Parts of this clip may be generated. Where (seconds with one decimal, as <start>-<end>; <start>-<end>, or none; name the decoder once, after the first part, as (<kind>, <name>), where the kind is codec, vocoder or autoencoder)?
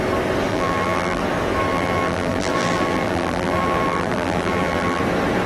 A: 0.5-1.2 (vocoder, BigVGAN v2); 1.7-5.0